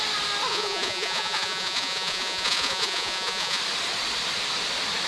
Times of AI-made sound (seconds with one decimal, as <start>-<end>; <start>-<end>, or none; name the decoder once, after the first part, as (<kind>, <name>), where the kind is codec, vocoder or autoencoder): 0.5-3.6 (vocoder, Vocos)